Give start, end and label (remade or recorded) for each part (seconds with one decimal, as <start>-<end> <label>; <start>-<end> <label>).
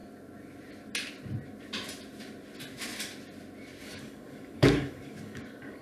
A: 0.0-3.8 recorded; 3.8-5.8 remade